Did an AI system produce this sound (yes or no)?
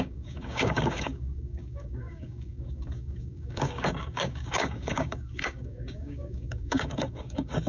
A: yes